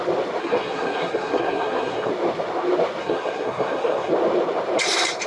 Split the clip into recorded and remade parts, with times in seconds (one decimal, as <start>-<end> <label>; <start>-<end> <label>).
0.0-0.4 recorded; 0.4-2.1 remade; 2.1-3.0 recorded; 3.0-4.1 remade; 4.1-5.3 recorded